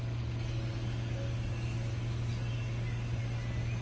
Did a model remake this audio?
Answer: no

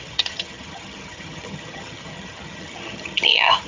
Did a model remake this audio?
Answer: yes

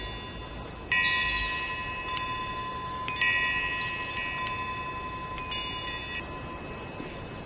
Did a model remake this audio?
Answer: no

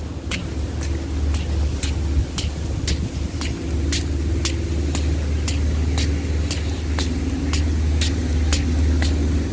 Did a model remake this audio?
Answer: no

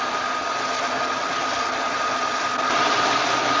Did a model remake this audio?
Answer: no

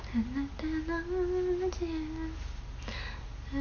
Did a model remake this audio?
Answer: no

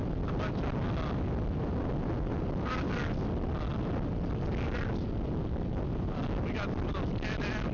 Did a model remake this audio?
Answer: no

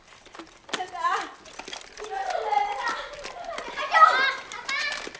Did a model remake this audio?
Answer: no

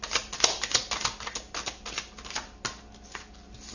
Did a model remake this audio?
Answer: no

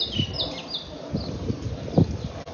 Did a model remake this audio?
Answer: no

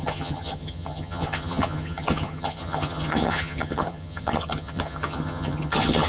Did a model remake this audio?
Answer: yes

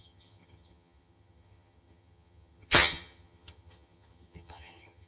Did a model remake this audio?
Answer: yes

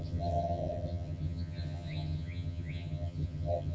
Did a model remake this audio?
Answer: yes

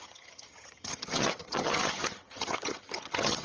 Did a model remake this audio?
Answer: yes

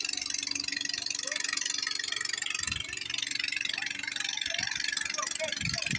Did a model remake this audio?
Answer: no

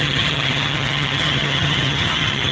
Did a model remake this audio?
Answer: yes